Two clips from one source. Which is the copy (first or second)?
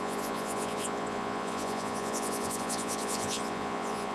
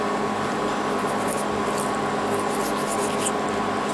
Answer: first